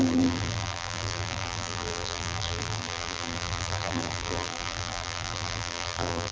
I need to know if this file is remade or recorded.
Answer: remade